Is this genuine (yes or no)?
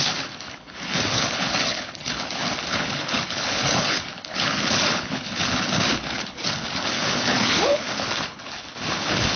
no